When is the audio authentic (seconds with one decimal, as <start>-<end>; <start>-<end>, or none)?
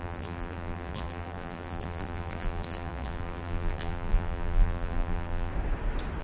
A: 5.5-6.2